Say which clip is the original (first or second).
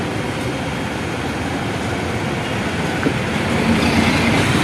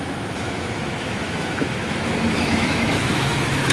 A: first